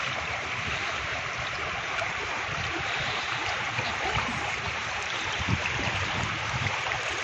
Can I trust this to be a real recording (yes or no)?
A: no